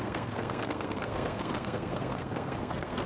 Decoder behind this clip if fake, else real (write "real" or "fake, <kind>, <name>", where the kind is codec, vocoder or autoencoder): fake, codec, SNAC